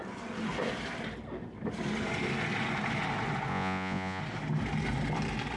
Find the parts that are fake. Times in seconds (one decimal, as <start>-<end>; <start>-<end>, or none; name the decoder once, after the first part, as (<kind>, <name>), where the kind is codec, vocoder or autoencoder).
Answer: 3.5-4.2 (vocoder, Vocos)